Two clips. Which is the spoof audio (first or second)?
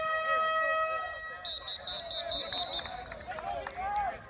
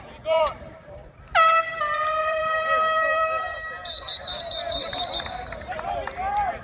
second